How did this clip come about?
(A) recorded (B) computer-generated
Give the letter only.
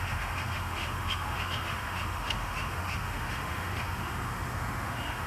B